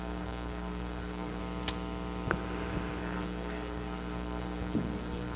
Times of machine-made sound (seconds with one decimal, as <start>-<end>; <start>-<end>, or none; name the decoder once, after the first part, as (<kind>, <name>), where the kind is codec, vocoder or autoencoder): 0.0-1.4 (codec, SNAC); 3.0-5.4